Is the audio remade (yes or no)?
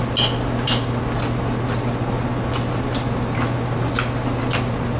no